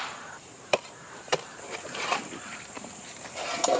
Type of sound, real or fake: fake